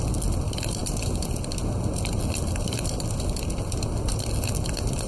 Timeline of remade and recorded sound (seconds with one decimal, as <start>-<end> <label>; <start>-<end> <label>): 0.0-5.1 recorded